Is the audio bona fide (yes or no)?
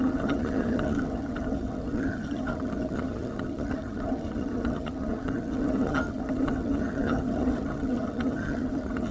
no